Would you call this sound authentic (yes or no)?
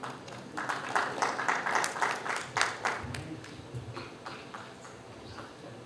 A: yes